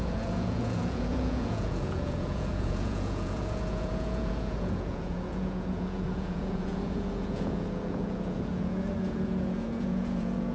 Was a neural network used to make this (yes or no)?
yes